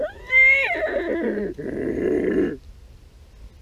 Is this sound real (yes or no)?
yes